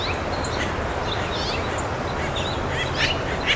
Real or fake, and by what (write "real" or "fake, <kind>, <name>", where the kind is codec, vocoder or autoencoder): real